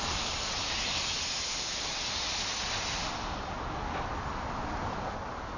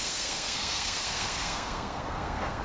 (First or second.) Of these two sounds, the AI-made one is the second